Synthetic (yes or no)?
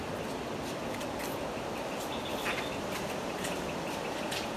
no